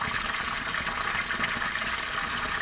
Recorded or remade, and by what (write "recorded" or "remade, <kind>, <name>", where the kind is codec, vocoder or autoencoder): recorded